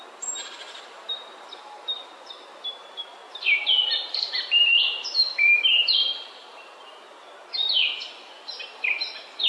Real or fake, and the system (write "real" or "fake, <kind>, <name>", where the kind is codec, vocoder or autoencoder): fake, vocoder, BigVGAN v2